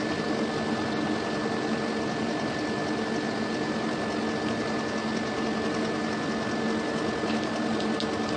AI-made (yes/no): no